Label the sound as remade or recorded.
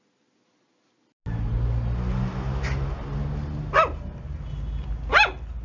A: recorded